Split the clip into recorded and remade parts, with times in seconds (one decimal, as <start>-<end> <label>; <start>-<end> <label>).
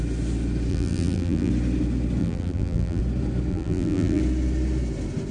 0.0-0.7 recorded; 0.7-1.5 remade; 1.5-2.2 recorded; 2.2-3.0 remade; 3.0-3.5 recorded; 3.5-4.2 remade; 4.2-5.3 recorded